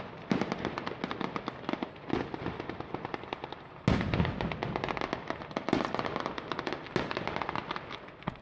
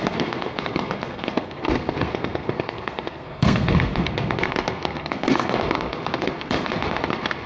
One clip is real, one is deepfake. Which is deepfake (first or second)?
second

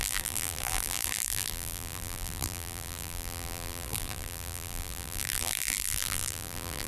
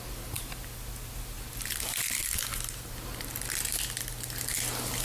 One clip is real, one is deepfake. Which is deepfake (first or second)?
first